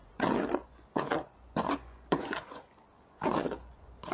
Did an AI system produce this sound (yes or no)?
yes